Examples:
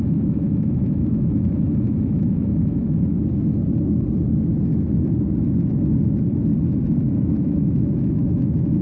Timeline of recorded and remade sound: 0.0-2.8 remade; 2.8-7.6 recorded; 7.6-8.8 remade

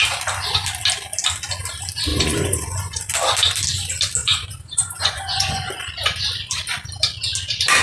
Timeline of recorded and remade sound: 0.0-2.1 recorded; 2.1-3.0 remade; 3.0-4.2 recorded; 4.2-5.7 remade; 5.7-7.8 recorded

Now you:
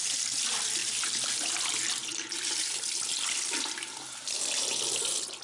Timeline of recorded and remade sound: 0.0-2.0 recorded; 2.0-4.4 remade; 4.4-5.4 recorded

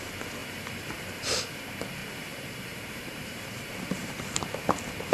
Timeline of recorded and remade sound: 0.0-0.4 recorded; 0.4-1.4 remade; 1.4-2.0 recorded; 2.0-4.4 remade; 4.4-5.1 recorded

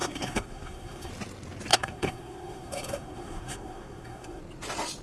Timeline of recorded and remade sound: 0.0-1.1 remade; 1.1-1.7 recorded; 1.7-4.4 remade; 4.4-5.0 recorded

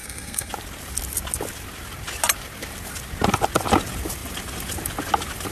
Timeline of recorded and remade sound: 0.0-0.5 remade; 0.5-5.5 recorded

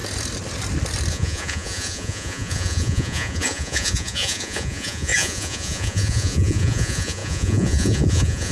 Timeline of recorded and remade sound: 0.0-1.1 recorded; 1.1-8.5 remade